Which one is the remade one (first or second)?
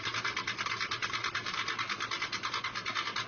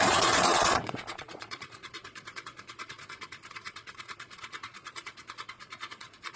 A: second